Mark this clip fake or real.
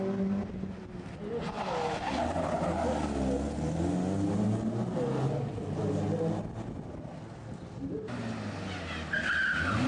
real